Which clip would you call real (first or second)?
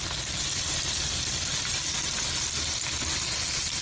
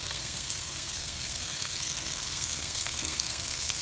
first